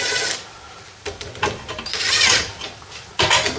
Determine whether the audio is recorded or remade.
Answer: recorded